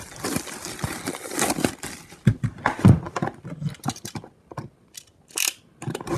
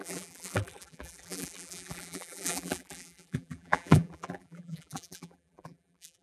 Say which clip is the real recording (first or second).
first